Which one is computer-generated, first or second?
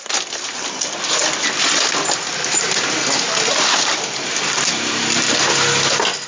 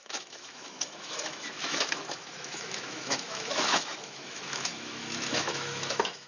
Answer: second